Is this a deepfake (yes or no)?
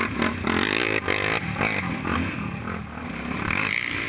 no